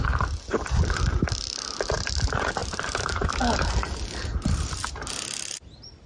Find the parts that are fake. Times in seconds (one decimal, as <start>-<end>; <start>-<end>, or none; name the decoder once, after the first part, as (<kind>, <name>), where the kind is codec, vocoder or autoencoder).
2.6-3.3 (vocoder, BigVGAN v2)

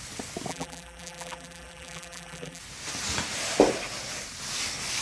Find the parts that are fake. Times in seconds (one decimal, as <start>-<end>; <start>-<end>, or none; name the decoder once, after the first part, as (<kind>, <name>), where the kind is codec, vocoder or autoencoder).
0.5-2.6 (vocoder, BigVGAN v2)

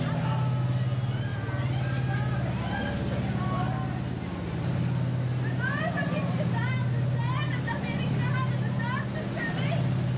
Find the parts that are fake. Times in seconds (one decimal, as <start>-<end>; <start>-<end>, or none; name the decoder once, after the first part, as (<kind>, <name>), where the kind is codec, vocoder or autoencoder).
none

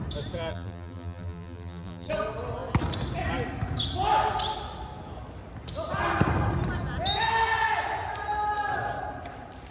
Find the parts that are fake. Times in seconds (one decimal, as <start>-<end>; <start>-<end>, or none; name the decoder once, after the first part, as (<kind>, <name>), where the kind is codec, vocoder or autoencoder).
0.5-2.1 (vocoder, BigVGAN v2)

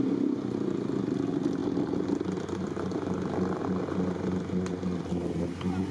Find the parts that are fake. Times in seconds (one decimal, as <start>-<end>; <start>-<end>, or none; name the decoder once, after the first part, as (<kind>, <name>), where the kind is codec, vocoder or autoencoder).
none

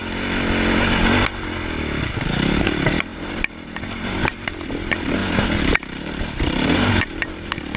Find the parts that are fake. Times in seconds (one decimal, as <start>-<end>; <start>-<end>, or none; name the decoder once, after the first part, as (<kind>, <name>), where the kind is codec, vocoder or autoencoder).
2.0-5.2 (vocoder, BigVGAN v2); 6.0-7.8

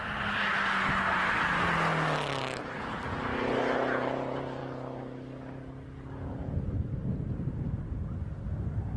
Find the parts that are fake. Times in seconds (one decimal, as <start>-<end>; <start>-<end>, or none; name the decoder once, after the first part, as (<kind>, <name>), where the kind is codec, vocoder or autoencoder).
none